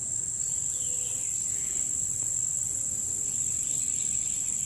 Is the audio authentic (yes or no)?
yes